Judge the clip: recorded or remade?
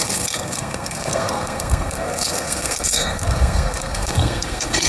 remade